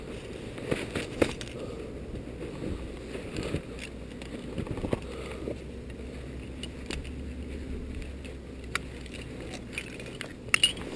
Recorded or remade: recorded